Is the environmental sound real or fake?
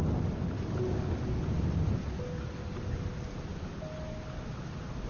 real